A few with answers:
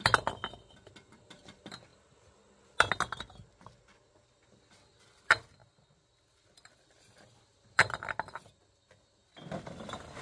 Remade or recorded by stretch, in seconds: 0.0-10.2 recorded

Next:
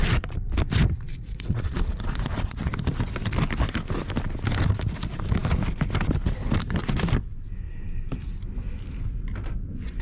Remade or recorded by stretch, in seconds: 0.0-1.2 recorded; 1.2-2.7 remade; 2.7-10.0 recorded

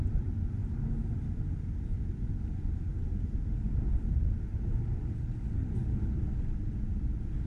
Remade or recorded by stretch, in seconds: 0.0-7.5 recorded